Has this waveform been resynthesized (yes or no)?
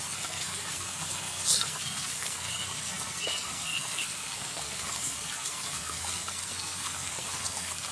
yes